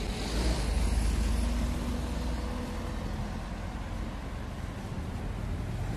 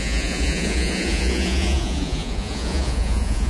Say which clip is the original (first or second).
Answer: first